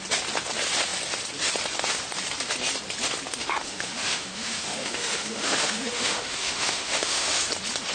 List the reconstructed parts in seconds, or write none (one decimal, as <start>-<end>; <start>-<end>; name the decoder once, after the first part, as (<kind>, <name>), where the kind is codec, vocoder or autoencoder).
3.4-7.4 (autoencoder, DAC-VAE)